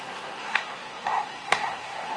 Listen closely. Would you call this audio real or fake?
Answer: fake